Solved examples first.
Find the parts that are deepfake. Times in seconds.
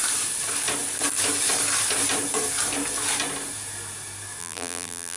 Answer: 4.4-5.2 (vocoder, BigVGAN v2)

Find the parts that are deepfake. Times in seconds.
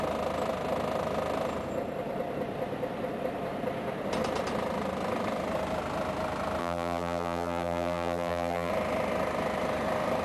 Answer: 6.6-8.7 (vocoder, BigVGAN v2)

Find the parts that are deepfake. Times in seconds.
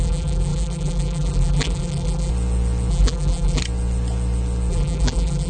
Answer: 0.0-2.3 (vocoder, BigVGAN v2); 2.9-3.6; 4.7-5.5